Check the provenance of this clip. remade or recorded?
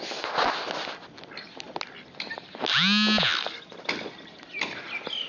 recorded